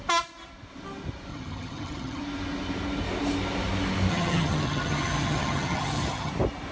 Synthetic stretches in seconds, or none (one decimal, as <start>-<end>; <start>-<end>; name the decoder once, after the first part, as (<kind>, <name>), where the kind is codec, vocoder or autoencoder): 1.3-2.2 (vocoder, HiFi-GAN); 4.1-6.3